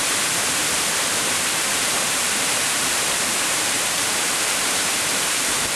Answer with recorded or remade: remade